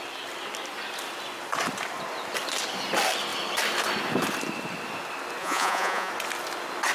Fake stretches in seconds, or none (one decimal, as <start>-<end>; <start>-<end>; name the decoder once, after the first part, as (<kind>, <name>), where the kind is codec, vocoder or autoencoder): 5.4-6.1 (vocoder, Vocos)